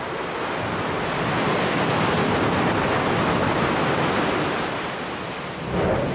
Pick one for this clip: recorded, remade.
recorded